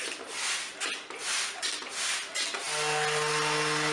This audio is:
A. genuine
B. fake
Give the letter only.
A